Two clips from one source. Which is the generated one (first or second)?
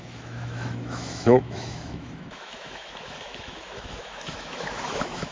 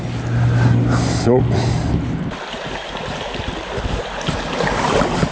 first